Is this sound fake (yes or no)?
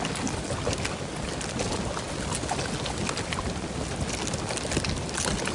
no